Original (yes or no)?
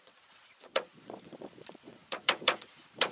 no